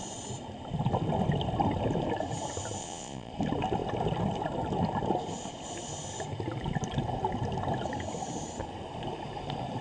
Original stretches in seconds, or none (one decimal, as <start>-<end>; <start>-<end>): 0.0-2.8; 3.3-9.8